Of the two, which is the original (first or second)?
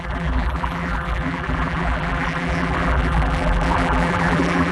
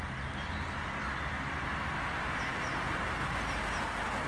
second